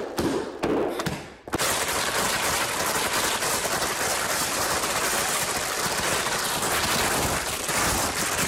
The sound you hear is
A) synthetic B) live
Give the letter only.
A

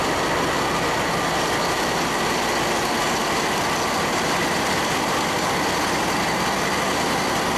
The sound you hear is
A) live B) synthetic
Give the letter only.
A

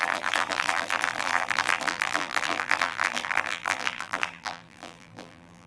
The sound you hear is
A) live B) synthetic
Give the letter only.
B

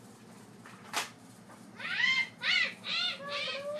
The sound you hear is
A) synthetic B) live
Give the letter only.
A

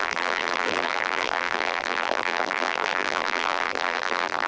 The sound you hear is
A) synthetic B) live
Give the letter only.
A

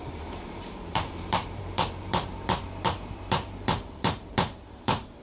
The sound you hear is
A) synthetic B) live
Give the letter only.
A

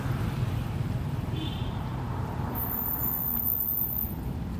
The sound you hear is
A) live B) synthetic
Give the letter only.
B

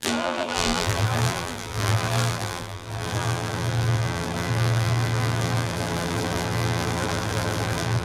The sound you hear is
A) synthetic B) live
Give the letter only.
A